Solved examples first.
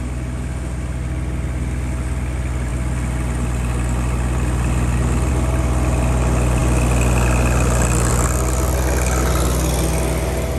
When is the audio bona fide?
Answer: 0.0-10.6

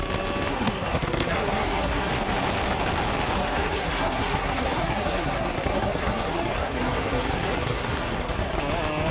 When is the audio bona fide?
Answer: 0.0-0.5; 2.1-3.4; 8.6-9.1

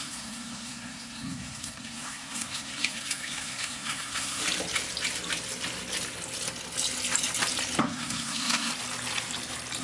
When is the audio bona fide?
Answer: 4.4-7.8; 8.7-9.8

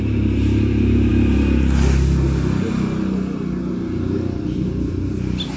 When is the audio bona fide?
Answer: 0.0-5.6